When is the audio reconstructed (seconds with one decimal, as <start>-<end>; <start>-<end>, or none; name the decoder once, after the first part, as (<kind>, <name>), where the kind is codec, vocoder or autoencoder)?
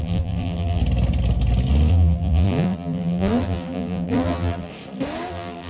0.0-0.8 (vocoder, BigVGAN v2); 1.9-4.7; 5.3-5.7